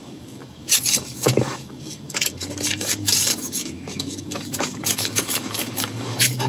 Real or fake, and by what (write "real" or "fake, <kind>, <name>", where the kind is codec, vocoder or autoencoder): fake, codec, DAC